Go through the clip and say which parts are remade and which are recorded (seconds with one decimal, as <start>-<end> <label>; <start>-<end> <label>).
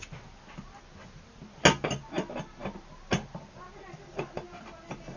0.0-5.2 recorded